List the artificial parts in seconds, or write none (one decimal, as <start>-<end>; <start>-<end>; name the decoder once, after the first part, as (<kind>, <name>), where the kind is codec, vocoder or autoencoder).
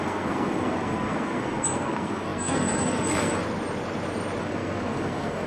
0.0-3.4 (codec, SNAC); 4.4-5.5